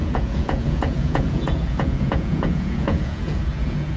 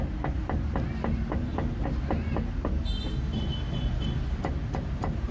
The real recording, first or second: second